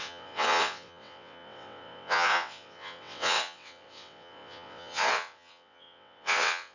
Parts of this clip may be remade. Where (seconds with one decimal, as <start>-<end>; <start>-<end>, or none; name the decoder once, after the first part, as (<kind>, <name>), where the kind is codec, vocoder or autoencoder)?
0.0-6.7 (vocoder, WaveNeXt)